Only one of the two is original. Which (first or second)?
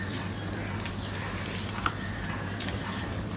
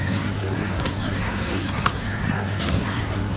first